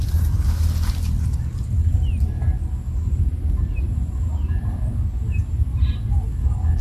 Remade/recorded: recorded